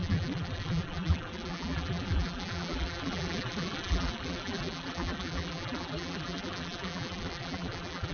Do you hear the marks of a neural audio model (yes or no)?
yes